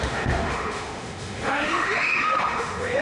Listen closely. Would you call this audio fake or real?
fake